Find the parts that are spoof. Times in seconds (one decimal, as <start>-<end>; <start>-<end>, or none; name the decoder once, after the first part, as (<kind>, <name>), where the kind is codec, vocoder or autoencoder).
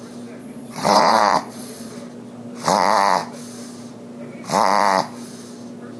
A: 0.4-1.9 (vocoder, Vocos)